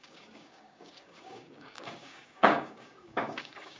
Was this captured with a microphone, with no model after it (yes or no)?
no